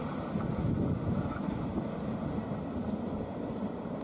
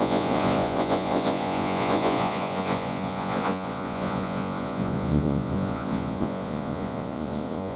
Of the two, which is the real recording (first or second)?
first